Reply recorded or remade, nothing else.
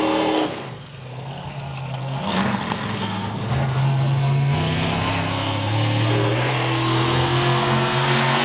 remade